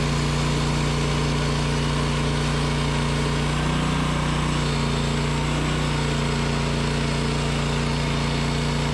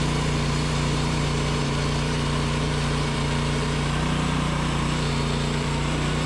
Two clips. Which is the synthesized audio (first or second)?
second